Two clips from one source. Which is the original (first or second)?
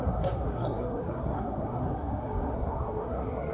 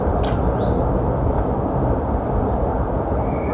second